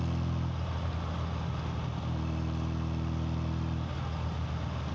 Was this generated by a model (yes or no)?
no